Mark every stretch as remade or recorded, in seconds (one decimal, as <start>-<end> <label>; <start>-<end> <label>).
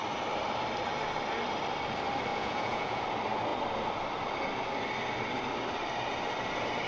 0.0-2.3 recorded; 2.3-3.0 remade; 3.0-6.9 recorded